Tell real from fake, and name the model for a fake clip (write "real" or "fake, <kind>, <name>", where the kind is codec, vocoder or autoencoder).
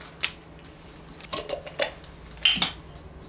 real